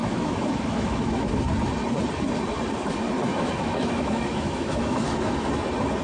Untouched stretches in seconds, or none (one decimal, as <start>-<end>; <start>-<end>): 1.4-3.3; 5.5-6.0

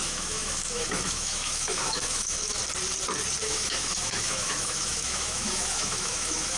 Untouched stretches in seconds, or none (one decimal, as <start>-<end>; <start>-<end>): 2.6-3.4

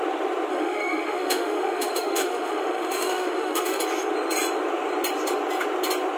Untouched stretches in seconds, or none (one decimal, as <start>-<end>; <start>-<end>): 0.0-0.5; 3.8-6.2